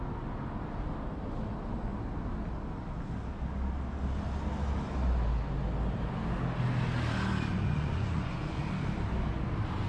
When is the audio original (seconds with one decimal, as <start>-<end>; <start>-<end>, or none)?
0.0-7.5; 8.6-9.9